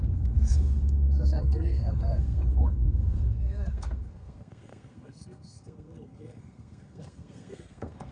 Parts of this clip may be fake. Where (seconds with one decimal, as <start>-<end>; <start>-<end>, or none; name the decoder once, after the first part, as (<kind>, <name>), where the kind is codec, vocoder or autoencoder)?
0.0-8.1 (codec, SNAC)